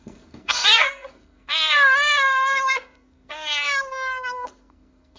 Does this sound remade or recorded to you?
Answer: remade